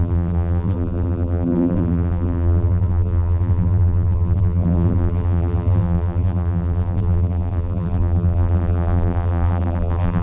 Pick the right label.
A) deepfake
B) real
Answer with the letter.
A